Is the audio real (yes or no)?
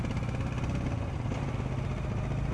yes